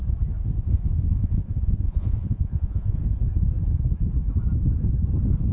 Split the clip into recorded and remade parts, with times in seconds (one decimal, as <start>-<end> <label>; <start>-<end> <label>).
0.0-1.2 recorded; 1.2-3.0 remade; 3.0-5.5 recorded